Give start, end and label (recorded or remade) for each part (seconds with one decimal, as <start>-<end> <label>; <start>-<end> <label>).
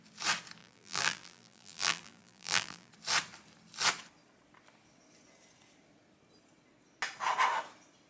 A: 0.0-0.6 recorded; 0.6-2.9 remade; 2.9-8.1 recorded